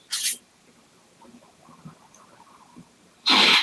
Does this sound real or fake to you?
fake